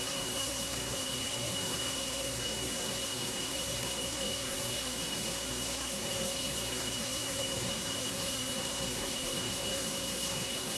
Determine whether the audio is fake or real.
fake